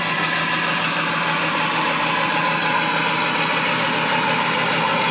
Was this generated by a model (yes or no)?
no